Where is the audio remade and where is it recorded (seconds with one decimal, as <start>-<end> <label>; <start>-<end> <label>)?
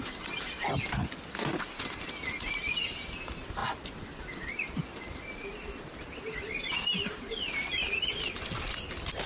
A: 0.0-9.3 recorded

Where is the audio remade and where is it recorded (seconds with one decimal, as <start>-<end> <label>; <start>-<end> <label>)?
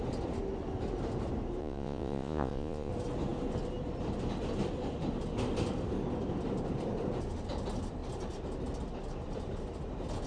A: 0.0-1.6 recorded; 1.6-2.9 remade; 2.9-10.3 recorded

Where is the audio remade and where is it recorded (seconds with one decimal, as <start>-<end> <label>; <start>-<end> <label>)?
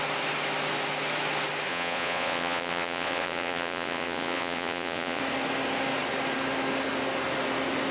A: 0.0-1.7 recorded; 1.7-5.2 remade; 5.2-7.9 recorded